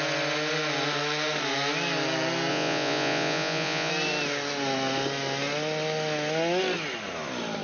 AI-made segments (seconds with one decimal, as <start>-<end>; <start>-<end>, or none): 2.5-3.9